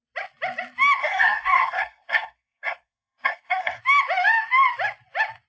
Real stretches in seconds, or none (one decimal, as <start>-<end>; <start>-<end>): 0.0-1.0; 3.8-5.5